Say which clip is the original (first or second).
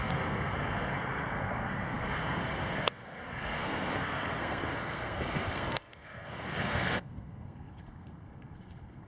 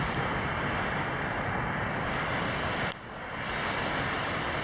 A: second